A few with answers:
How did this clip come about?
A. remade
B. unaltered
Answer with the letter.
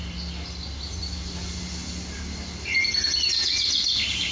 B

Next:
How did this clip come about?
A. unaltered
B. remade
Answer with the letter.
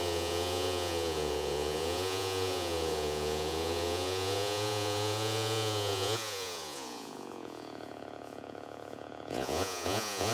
B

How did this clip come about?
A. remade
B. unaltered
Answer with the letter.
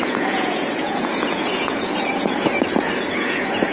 A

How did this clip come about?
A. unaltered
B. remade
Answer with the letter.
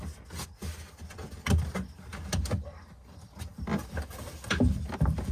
A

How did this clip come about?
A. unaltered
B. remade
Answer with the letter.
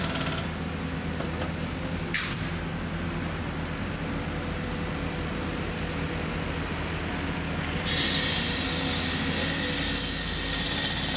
A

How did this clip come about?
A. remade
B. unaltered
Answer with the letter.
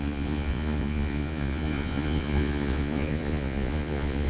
A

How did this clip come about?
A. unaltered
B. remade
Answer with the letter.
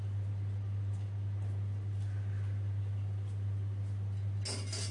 A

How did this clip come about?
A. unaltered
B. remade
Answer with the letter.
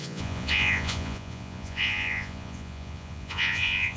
B